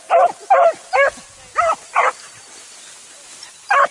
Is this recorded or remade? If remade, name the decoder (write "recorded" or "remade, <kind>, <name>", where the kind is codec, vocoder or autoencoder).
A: recorded